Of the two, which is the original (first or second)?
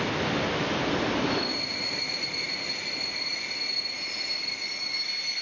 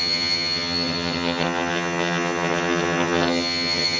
first